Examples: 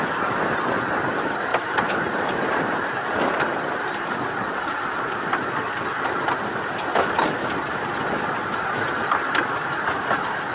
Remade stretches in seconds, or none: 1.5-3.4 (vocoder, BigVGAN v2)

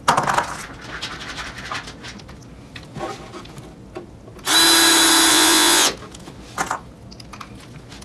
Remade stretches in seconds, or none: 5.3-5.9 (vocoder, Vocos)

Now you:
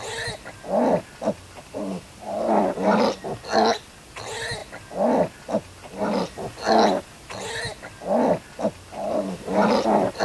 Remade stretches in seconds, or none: none

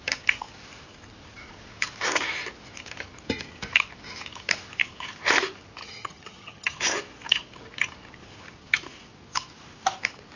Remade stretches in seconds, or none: 5.8-6.8 (vocoder, HiFi-GAN)

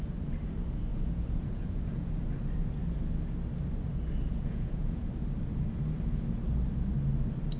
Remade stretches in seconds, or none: 0.9-2.1 (vocoder, Vocos); 4.3-5.1

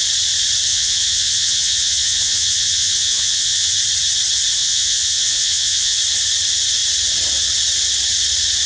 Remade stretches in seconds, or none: 0.7-3.7 (vocoder, Vocos); 4.6-6.0

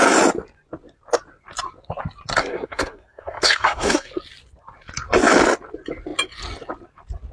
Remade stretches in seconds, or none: 2.4-4.1 (codec, SNAC)